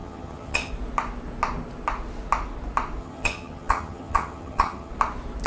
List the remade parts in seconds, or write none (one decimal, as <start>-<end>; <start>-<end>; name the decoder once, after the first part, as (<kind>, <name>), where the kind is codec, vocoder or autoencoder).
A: 0.0-0.7 (vocoder, HiFi-GAN); 3.0-4.9